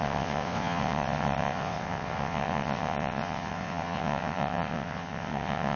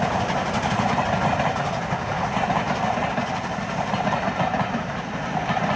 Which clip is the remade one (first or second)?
first